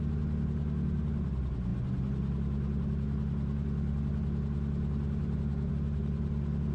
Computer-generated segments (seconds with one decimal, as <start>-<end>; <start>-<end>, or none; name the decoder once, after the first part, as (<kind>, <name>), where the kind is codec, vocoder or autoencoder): none